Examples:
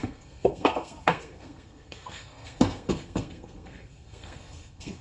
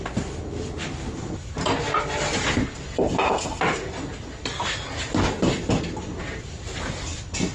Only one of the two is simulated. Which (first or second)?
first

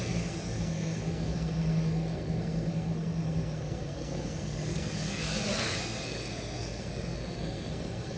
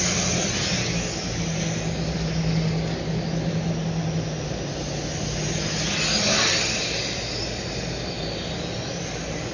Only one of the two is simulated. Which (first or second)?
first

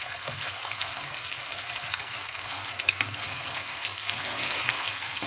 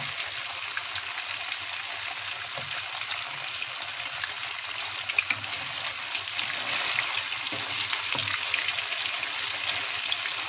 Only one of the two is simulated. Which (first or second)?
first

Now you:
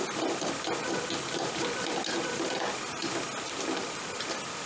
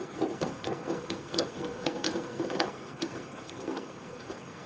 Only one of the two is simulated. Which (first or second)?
second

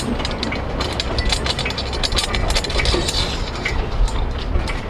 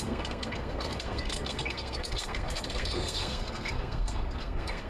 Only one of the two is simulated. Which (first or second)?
second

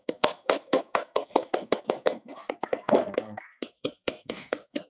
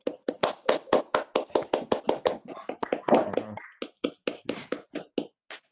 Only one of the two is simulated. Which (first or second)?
first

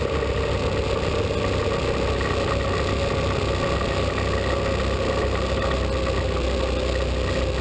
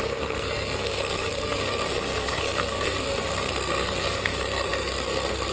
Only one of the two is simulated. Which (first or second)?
second